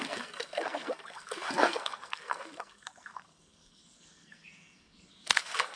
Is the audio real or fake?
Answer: fake